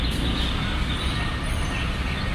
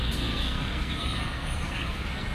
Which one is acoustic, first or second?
first